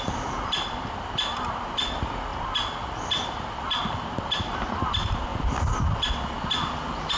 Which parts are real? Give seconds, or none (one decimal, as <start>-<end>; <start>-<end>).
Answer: 0.0-7.2